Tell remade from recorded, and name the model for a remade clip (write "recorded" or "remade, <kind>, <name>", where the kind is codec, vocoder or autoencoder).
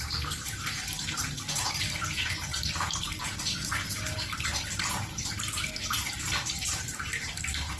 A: recorded